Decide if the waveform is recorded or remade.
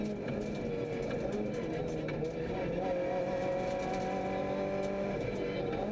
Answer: recorded